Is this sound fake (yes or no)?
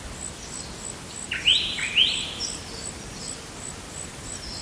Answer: no